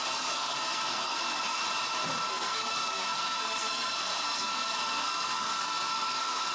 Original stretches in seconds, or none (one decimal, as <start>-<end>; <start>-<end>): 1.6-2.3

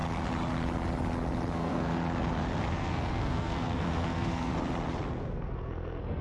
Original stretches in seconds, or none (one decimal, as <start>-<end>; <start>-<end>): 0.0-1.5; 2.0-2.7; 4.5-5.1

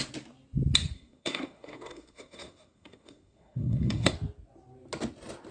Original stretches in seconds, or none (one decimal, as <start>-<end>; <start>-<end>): 0.0-0.8; 4.1-5.5